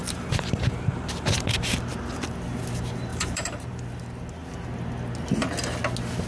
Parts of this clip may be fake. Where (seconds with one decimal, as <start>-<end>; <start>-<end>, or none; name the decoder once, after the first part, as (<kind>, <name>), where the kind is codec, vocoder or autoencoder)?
0.0-1.9 (vocoder, BigVGAN v2); 3.1-3.8